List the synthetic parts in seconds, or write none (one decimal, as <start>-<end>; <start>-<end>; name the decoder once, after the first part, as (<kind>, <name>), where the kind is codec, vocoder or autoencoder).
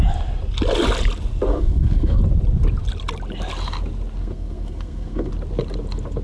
1.5-2.2 (codec, SNAC); 4.2-5.3